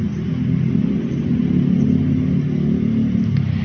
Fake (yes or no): no